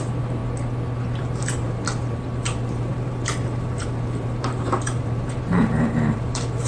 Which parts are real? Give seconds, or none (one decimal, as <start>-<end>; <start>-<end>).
0.4-1.2